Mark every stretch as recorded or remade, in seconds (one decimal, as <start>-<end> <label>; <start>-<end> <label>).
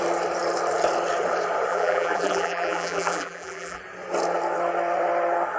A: 0.0-1.7 recorded; 1.7-3.8 remade; 3.8-5.6 recorded